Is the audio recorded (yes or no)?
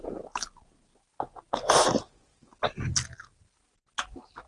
yes